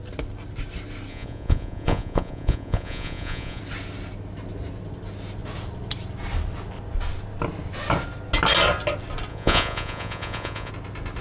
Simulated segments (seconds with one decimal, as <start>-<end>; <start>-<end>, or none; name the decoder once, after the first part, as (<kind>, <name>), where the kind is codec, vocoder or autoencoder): 1.1-3.6 (vocoder, Vocos); 9.3-10.7